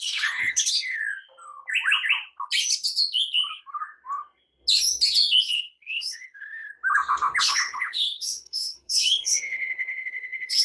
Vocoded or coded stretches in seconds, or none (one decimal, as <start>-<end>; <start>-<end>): 0.0-1.0; 5.4-6.7; 7.4-10.6